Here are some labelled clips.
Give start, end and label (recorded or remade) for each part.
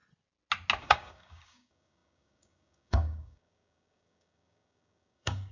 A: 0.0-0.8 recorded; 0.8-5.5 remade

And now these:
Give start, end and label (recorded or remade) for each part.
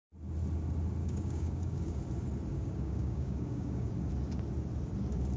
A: 0.0-1.0 recorded; 1.0-2.0 remade; 2.0-2.5 recorded; 2.5-3.9 remade; 3.9-5.4 recorded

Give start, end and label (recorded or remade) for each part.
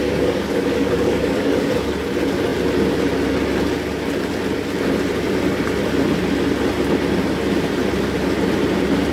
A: 0.0-1.7 remade; 1.7-9.1 recorded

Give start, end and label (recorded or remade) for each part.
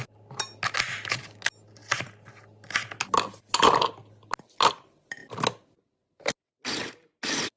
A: 0.0-7.6 recorded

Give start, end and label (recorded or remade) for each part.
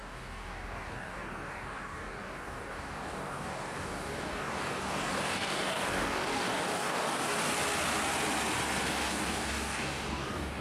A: 0.0-7.3 remade; 7.3-8.9 recorded; 8.9-10.6 remade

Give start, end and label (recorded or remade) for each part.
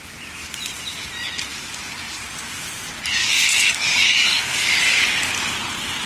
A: 0.0-1.5 recorded; 1.5-2.2 remade; 2.2-3.2 recorded; 3.2-5.3 remade; 5.3-6.1 recorded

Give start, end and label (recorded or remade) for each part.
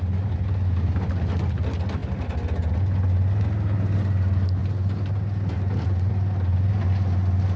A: 0.0-7.6 recorded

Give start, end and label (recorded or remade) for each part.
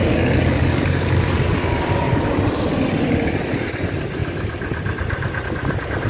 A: 0.0-2.3 remade; 2.3-6.1 recorded